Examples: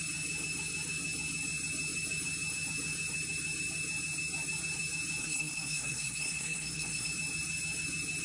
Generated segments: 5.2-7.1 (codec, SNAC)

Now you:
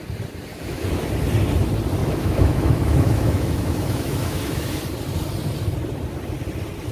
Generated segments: 0.5-1.1 (autoencoder, DAC-VAE); 2.0-4.8

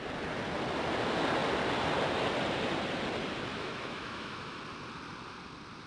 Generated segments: 3.5-4.6 (autoencoder, DAC-VAE)

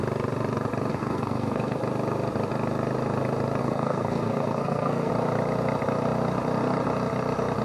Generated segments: 0.9-1.8 (codec, SNAC); 3.6-5.1